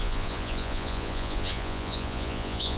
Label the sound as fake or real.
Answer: fake